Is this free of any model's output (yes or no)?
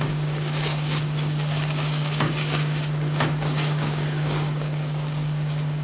no